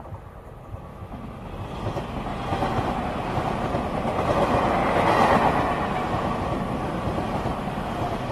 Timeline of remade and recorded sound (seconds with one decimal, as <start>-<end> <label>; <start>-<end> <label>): 0.0-0.9 recorded; 0.9-1.5 remade; 1.5-8.3 recorded